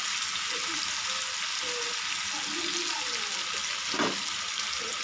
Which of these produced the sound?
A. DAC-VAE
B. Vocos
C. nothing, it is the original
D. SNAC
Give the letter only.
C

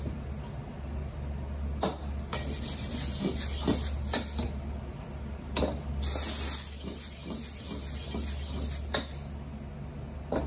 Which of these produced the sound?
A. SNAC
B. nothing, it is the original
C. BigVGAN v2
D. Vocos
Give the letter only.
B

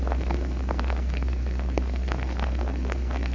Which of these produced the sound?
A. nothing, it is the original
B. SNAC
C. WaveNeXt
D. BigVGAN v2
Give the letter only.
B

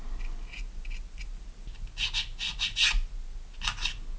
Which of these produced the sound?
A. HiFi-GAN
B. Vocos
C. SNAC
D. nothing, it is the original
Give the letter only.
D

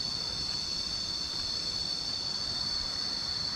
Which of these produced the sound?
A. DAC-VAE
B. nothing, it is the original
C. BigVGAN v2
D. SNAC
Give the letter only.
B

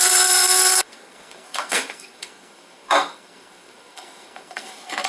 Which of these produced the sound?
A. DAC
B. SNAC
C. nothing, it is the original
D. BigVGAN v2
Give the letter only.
B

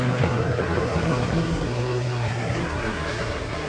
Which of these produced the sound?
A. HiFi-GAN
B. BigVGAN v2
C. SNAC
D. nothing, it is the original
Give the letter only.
C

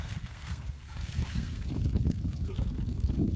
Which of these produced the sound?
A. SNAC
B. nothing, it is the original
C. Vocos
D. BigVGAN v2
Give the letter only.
A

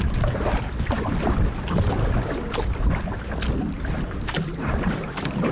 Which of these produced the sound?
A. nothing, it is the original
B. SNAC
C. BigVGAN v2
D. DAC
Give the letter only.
A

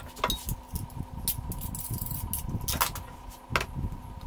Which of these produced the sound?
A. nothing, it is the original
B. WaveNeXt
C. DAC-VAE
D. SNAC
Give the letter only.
A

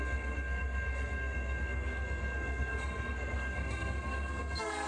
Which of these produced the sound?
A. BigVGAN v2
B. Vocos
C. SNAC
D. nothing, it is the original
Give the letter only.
C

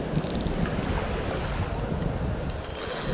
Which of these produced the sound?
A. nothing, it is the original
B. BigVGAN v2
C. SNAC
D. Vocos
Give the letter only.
A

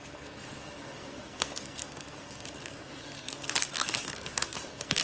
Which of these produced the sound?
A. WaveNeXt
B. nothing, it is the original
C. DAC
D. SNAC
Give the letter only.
D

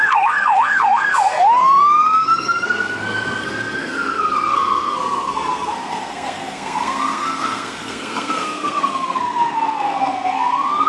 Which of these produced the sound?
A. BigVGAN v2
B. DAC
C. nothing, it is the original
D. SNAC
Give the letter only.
D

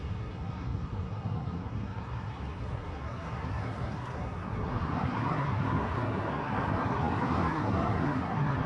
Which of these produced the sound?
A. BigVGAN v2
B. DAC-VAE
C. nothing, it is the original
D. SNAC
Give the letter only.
D